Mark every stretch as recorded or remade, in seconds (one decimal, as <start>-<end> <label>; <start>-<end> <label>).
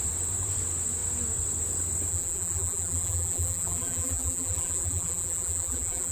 0.0-2.1 recorded; 2.1-6.1 remade